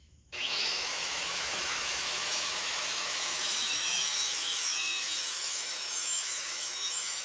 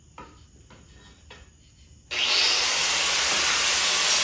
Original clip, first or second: second